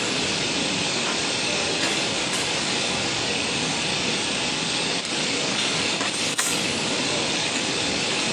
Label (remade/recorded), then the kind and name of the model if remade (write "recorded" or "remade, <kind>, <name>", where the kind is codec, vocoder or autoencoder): remade, codec, DAC